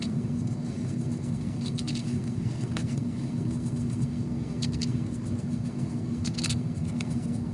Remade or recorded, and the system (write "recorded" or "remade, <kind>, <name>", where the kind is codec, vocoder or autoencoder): remade, codec, SNAC